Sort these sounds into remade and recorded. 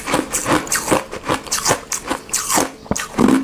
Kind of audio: recorded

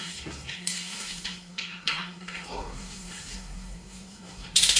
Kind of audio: remade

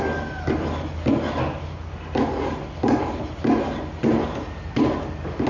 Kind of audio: recorded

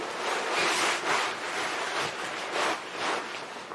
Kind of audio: recorded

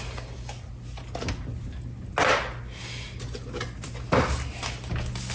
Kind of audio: recorded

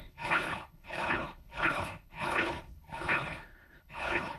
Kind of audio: remade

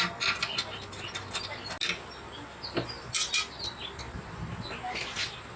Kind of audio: recorded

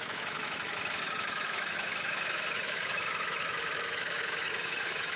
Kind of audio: remade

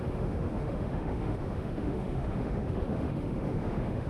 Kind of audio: remade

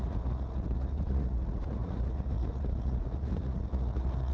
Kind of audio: remade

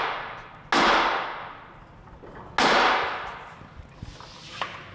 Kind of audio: recorded